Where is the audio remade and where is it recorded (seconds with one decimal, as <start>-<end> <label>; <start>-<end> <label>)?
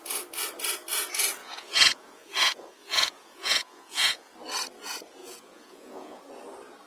0.0-1.4 recorded; 1.4-4.3 remade; 4.3-5.2 recorded; 5.2-6.2 remade; 6.2-6.9 recorded